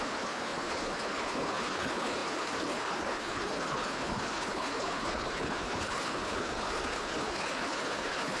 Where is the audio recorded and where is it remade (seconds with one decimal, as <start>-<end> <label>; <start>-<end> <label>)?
0.0-8.4 remade